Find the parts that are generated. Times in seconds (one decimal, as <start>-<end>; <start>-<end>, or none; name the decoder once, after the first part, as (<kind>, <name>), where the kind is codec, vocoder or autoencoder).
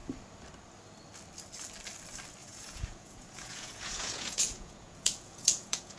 2.4-6.0 (vocoder, Vocos)